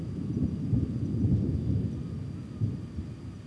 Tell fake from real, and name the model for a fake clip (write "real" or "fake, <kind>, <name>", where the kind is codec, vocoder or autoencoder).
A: real